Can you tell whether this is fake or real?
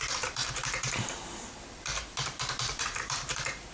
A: fake